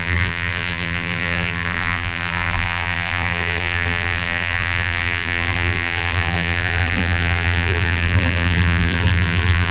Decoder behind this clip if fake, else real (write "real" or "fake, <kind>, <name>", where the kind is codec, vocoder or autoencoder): fake, vocoder, BigVGAN v2